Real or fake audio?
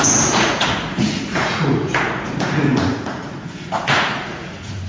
fake